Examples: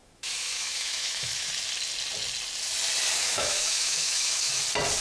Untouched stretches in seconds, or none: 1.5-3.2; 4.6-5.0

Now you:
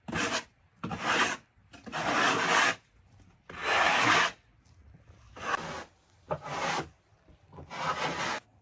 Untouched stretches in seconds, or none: 0.0-8.6

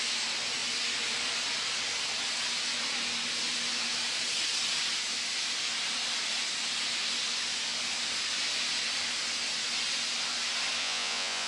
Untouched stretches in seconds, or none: 0.0-10.8

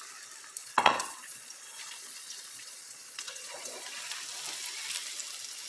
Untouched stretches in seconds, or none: 0.0-0.6; 4.0-5.7

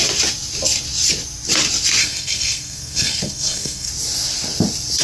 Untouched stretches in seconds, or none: 0.0-2.0; 3.9-5.0